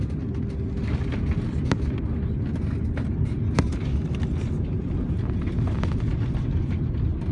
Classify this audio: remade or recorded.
recorded